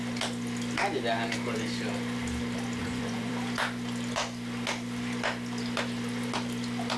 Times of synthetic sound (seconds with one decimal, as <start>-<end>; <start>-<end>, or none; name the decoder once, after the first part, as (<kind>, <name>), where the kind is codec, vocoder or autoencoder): 2.8-3.3 (vocoder, Vocos)